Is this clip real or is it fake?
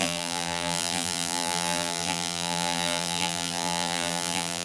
fake